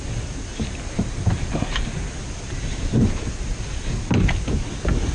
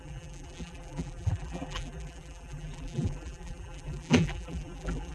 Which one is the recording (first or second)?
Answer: first